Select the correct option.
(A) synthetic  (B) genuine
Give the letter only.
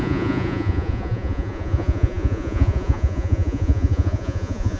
A